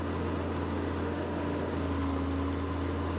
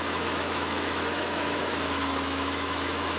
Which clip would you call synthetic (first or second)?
second